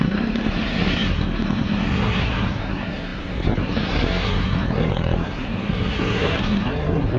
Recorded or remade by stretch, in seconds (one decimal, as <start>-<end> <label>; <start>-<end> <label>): 0.0-7.2 remade